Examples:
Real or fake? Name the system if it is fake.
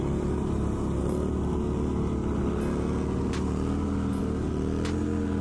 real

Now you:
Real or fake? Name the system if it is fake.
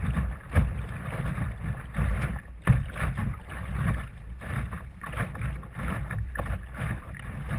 real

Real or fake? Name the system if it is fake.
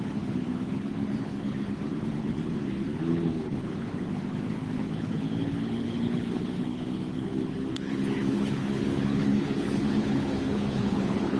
fake, codec, HILCodec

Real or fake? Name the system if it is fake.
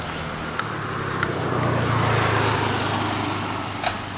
real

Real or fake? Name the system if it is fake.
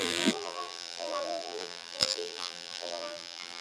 fake, vocoder, BigVGAN v2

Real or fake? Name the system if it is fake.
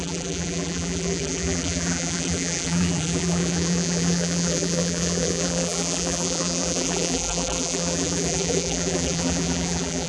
fake, vocoder, BigVGAN v2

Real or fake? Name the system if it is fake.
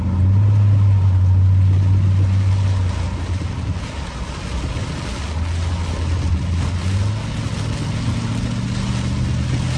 real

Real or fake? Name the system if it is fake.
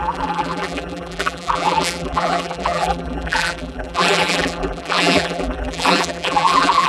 fake, vocoder, BigVGAN v2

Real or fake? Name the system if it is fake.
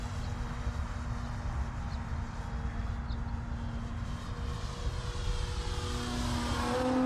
real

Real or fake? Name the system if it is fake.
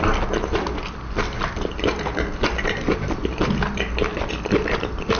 real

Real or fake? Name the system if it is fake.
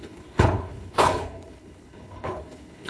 fake, codec, HILCodec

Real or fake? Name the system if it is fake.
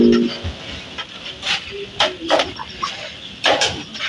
real